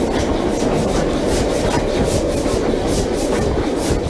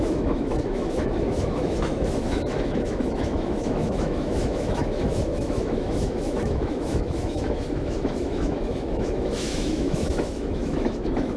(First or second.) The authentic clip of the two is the first